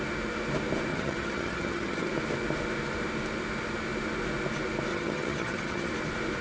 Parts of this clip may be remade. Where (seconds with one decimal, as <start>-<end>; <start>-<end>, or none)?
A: 0.9-2.1; 4.9-5.9

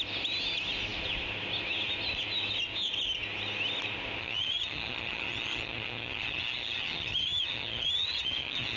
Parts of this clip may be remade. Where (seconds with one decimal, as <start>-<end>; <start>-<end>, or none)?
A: 4.2-8.8

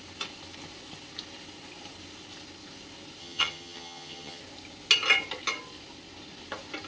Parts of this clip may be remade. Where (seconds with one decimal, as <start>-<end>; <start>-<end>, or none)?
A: 3.2-4.4

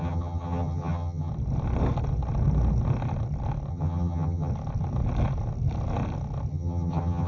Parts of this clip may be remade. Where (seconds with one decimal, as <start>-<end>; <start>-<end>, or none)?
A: 0.0-1.3; 3.7-4.5; 6.5-7.3

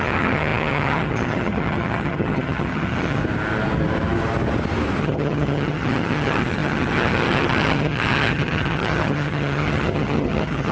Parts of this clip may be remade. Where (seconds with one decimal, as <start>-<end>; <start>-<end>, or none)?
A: 0.0-3.2; 5.0-10.7